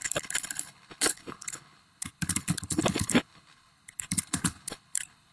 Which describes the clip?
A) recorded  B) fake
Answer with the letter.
B